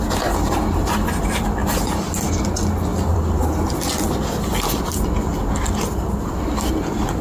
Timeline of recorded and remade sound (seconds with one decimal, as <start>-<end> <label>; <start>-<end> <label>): 0.0-1.6 recorded; 1.6-2.3 remade; 2.3-2.9 recorded; 2.9-3.8 remade; 3.8-7.2 recorded